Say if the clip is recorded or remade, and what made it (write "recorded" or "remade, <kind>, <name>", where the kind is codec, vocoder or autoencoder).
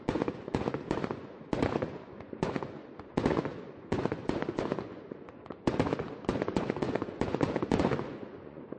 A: remade, vocoder, Vocos